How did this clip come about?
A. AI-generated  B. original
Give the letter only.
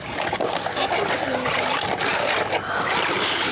B